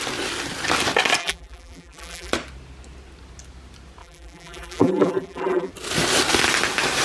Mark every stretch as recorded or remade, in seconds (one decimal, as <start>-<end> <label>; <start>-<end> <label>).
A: 0.0-1.2 recorded; 1.2-2.3 remade; 2.3-4.0 recorded; 4.0-5.7 remade; 5.7-7.0 recorded